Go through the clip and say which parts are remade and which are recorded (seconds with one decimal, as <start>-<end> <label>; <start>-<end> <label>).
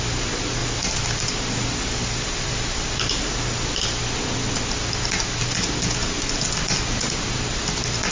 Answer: 0.0-0.6 recorded; 0.6-3.8 remade; 3.8-8.1 recorded